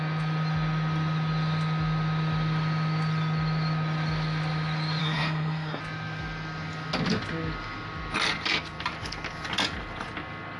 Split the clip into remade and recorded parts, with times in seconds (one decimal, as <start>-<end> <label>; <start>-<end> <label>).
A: 0.0-5.0 recorded; 5.0-5.8 remade; 5.8-10.6 recorded